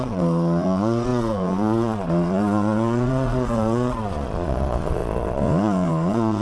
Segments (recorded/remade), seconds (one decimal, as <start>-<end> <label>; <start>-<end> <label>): 0.0-6.4 remade